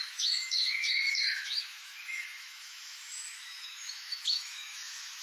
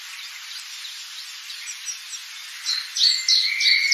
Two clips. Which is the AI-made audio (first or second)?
first